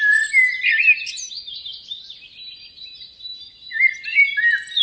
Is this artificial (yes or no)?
no